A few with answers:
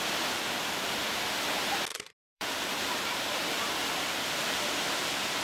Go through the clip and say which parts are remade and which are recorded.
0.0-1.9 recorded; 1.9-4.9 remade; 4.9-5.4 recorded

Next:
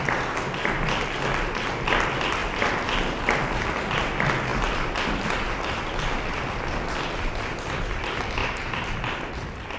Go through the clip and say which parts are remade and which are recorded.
0.0-8.4 recorded; 8.4-8.9 remade; 8.9-9.8 recorded

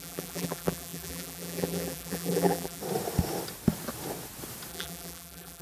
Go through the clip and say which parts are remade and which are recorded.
0.0-2.8 remade; 2.8-4.7 recorded; 4.7-5.6 remade